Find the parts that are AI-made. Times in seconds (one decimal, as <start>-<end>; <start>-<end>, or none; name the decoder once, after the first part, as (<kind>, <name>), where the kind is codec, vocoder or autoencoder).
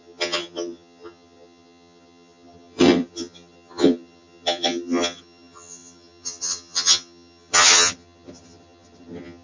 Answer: 0.0-9.4 (vocoder, HiFi-GAN)